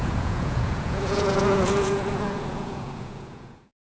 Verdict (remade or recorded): remade